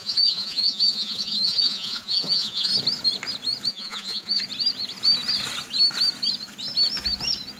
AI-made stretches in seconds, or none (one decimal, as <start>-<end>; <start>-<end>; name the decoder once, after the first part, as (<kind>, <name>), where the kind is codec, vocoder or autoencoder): 0.0-2.7 (vocoder, Vocos); 3.7-4.4

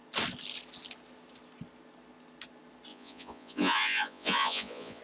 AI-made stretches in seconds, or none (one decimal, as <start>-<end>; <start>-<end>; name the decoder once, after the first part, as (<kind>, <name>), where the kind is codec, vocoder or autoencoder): 2.9-5.0 (vocoder, Vocos)

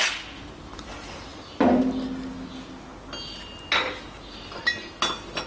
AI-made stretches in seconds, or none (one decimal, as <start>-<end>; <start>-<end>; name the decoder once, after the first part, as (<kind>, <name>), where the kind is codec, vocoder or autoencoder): none

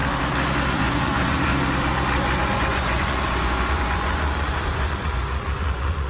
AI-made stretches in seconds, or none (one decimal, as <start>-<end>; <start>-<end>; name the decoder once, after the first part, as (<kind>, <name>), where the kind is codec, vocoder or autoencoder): 0.7-1.5 (vocoder, Vocos); 2.5-6.1